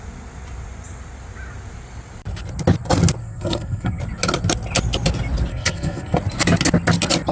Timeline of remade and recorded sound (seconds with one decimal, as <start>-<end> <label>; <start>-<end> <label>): 0.0-3.2 recorded; 3.2-4.0 remade; 4.0-5.5 recorded; 5.5-6.2 remade; 6.2-7.3 recorded